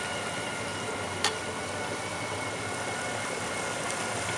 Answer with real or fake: real